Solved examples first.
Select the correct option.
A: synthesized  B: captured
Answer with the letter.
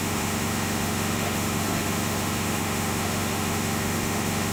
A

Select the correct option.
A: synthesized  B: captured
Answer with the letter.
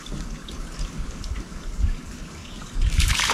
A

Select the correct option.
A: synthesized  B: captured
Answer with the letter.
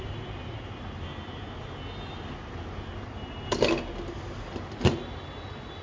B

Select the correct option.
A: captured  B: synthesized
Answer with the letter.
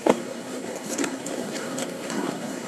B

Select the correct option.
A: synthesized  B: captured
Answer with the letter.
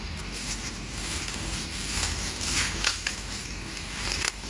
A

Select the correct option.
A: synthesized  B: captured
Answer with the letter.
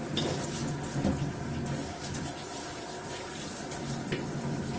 B